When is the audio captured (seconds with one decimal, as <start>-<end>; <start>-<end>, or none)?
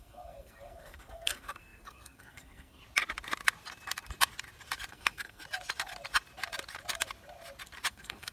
2.8-4.9; 5.4-7.9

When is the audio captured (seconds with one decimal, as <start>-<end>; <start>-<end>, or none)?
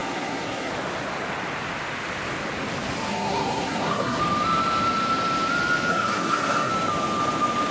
0.7-3.1; 4.2-5.9; 6.7-7.7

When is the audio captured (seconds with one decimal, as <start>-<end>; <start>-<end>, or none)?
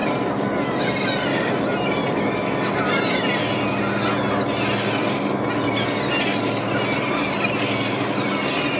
0.0-8.8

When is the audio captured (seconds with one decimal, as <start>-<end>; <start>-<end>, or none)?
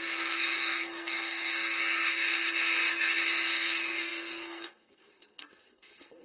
none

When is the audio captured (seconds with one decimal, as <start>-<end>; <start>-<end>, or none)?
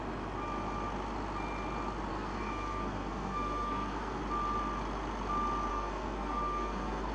0.0-2.1; 4.2-5.7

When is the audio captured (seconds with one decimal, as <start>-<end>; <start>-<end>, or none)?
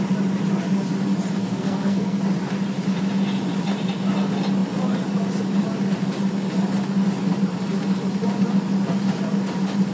0.0-1.4; 2.2-9.9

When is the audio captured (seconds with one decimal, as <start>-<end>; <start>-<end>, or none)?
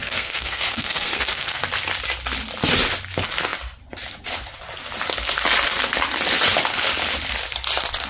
1.6-8.1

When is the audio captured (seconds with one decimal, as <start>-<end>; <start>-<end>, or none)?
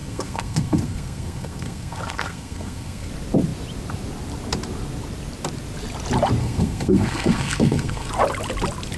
3.1-6.4; 8.1-9.0